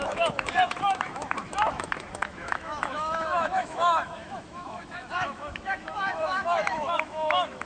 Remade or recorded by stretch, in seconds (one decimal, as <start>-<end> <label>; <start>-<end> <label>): 0.0-7.7 remade